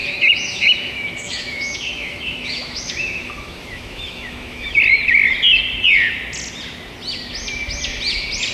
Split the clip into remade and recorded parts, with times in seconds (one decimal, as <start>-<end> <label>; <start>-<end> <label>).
0.0-4.8 remade; 4.8-8.5 recorded